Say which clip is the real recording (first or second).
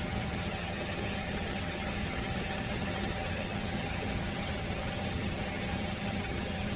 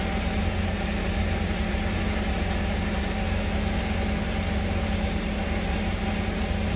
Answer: second